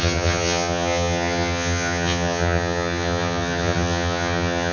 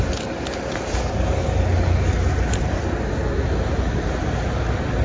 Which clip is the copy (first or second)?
first